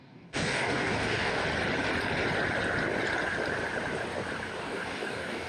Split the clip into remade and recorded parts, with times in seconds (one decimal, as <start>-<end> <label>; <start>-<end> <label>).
0.0-1.4 remade; 1.4-4.6 recorded; 4.6-5.5 remade